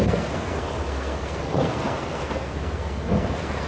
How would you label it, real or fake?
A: fake